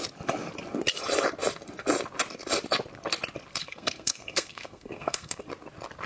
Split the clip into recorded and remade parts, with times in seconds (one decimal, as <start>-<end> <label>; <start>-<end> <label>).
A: 0.0-3.6 recorded; 3.6-5.4 remade; 5.4-6.1 recorded